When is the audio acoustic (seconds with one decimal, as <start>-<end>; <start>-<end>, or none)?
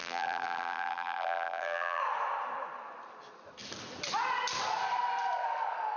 2.0-6.0